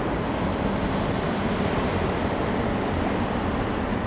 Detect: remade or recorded recorded